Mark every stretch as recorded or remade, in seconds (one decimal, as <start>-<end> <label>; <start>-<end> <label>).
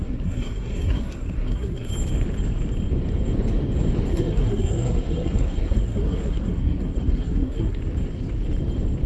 0.0-1.9 remade; 1.9-4.1 recorded; 4.1-7.8 remade; 7.8-9.1 recorded